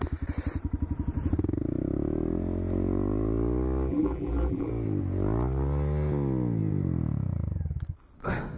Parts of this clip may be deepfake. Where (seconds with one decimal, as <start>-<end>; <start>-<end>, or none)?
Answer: 3.9-4.7